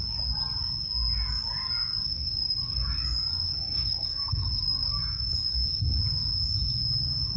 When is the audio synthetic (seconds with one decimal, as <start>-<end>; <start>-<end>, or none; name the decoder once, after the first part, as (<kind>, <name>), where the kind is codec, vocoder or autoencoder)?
2.1-2.9 (codec, DAC); 3.5-5.4